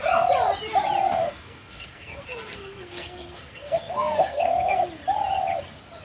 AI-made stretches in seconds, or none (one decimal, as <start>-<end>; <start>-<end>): 1.2-4.8